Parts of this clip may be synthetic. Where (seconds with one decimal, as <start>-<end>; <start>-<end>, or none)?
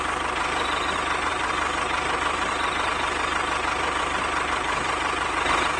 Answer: none